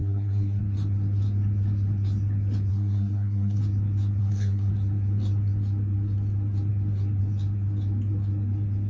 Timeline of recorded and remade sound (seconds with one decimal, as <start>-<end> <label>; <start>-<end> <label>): 0.0-0.6 remade; 0.6-2.7 recorded; 2.7-3.6 remade; 3.6-4.2 recorded; 4.2-4.7 remade; 4.7-8.9 recorded